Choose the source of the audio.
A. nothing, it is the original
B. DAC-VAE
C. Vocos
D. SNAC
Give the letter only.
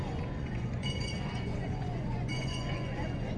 C